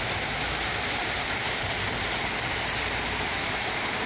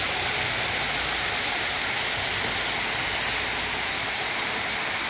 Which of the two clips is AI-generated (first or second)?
first